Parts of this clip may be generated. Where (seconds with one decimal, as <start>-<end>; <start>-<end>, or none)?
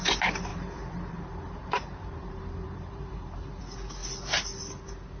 0.5-3.6